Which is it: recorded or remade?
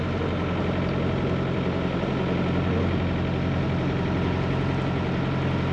recorded